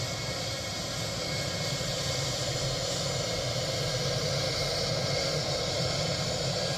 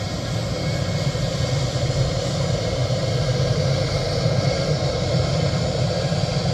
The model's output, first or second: second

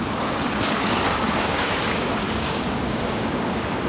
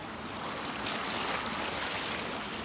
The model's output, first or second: first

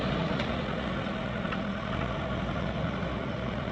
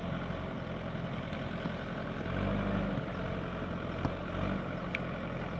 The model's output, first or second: first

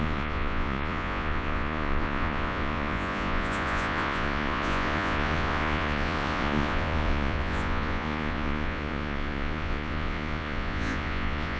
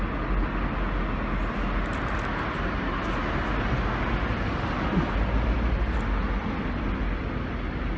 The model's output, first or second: first